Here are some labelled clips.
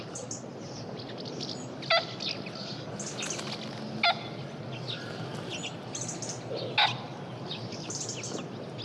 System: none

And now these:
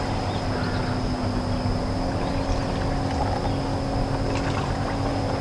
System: none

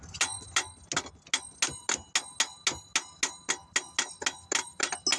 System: none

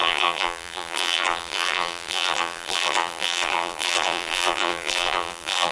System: vocoder, BigVGAN v2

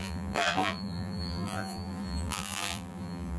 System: vocoder, BigVGAN v2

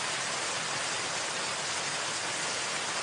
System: vocoder, BigVGAN v2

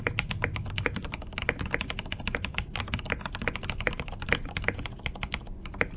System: vocoder, BigVGAN v2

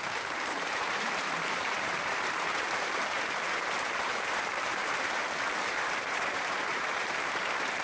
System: vocoder, BigVGAN v2